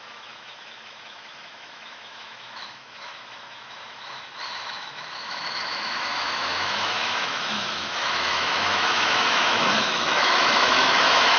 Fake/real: fake